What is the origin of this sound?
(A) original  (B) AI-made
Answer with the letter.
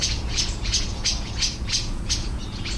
B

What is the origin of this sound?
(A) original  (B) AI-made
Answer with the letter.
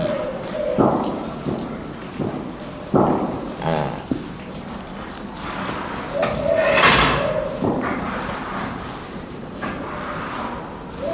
A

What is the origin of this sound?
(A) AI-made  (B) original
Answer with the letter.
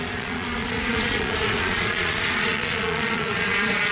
A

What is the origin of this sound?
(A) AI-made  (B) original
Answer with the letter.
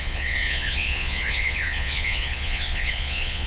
A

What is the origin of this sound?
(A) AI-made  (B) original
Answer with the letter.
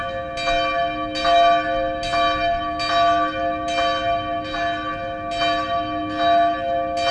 B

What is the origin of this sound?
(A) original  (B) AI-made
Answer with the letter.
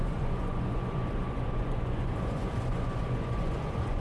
B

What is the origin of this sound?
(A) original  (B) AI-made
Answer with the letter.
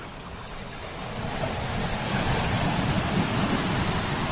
A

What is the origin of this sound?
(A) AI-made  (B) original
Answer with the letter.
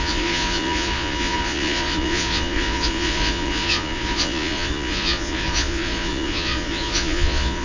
A